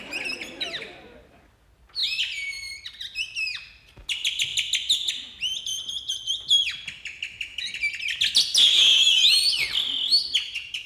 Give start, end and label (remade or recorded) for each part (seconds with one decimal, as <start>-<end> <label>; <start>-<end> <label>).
0.0-10.9 recorded